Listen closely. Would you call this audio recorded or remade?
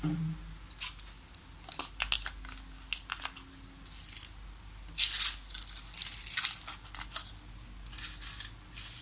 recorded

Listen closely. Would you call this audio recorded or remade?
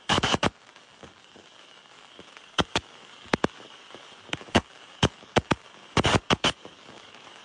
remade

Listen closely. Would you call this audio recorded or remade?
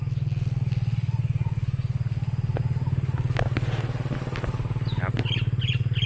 recorded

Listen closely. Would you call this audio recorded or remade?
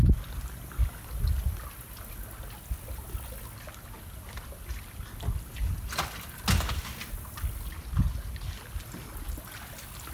recorded